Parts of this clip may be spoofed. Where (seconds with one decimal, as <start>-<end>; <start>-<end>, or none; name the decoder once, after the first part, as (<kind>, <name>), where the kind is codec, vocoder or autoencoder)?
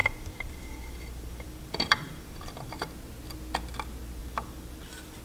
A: 0.0-2.7 (vocoder, BigVGAN v2); 4.2-5.2